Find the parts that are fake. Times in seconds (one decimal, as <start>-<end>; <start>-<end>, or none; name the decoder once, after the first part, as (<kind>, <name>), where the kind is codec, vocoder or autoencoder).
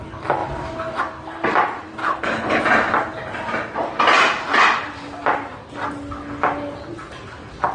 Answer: 2.0-2.6 (codec, HILCodec)